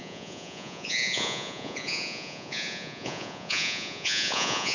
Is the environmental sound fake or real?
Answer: fake